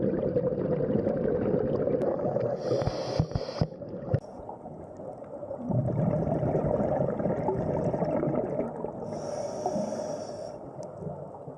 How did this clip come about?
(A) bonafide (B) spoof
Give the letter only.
A